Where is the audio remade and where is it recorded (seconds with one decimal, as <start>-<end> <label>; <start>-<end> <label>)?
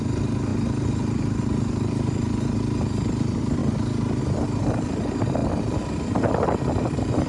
0.0-5.4 recorded; 5.4-6.2 remade; 6.2-7.3 recorded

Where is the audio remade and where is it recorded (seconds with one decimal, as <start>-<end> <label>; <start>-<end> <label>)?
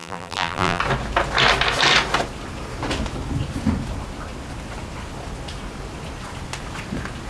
0.0-0.8 remade; 0.8-7.3 recorded